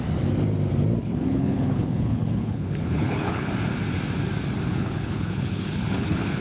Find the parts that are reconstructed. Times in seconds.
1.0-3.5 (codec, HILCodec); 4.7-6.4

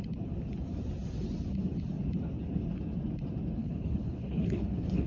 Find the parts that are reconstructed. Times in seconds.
3.6-5.1 (codec, HILCodec)

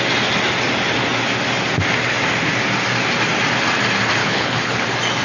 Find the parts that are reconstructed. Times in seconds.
4.2-4.8 (codec, HILCodec)

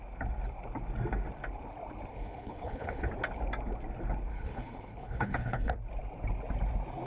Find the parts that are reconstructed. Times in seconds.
2.1-3.1 (codec, HILCodec); 4.3-5.7

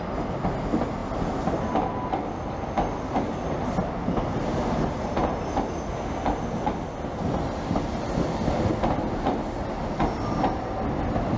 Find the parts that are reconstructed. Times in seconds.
none